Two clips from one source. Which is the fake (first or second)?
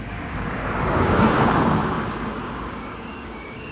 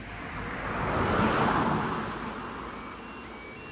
first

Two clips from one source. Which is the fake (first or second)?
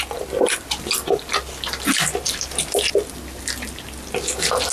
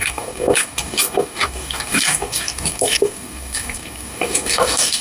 second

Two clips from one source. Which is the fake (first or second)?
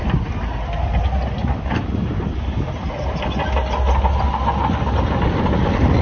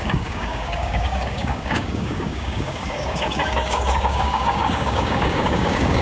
second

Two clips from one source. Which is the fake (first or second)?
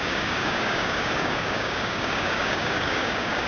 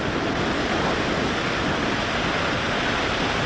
first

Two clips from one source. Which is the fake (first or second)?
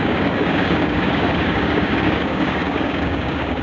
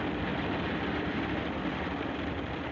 first